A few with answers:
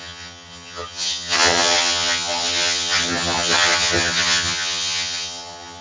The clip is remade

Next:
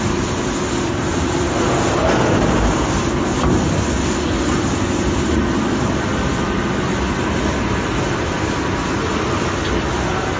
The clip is recorded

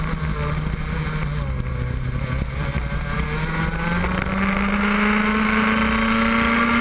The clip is recorded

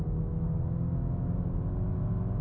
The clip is recorded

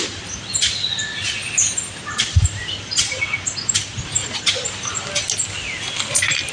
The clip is recorded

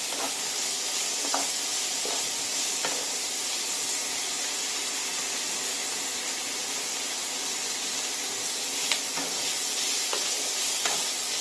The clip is recorded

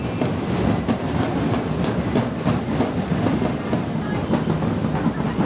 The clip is recorded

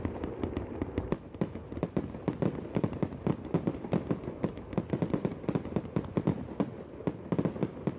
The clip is recorded